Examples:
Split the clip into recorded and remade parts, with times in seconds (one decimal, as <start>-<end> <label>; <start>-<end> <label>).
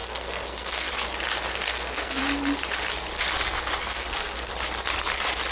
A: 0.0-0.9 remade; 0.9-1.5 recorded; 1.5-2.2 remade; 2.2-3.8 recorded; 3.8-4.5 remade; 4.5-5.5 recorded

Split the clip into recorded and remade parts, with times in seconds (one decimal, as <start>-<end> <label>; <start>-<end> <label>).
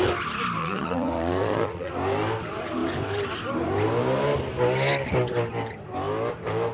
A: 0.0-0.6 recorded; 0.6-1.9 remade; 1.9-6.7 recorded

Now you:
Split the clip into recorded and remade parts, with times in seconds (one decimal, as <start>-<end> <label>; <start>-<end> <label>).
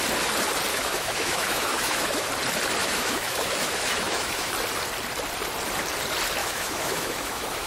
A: 0.0-0.7 recorded; 0.7-2.3 remade; 2.3-2.8 recorded; 2.8-4.5 remade; 4.5-6.4 recorded; 6.4-7.7 remade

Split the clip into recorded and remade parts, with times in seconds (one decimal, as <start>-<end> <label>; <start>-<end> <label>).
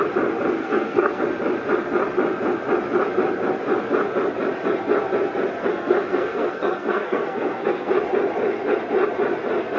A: 0.0-0.6 recorded; 0.6-1.2 remade; 1.2-5.6 recorded; 5.6-7.9 remade; 7.9-9.8 recorded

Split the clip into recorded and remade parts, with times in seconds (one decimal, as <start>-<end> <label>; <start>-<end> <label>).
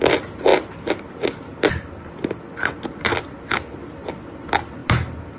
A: 0.0-5.4 recorded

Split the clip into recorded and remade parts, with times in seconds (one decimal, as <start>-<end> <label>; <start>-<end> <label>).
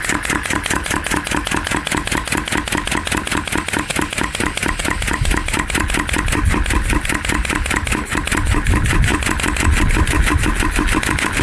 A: 0.0-11.4 recorded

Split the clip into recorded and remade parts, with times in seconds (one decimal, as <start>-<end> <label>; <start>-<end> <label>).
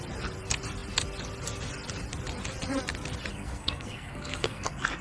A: 0.0-3.3 recorded; 3.3-5.0 remade